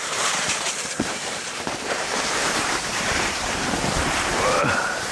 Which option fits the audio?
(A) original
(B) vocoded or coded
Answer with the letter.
B